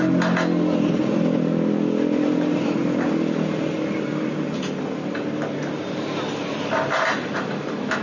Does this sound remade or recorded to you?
recorded